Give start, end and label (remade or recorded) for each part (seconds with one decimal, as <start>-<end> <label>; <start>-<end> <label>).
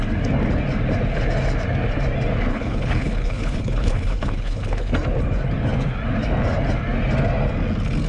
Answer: 0.0-2.5 recorded; 2.5-4.9 remade; 4.9-8.1 recorded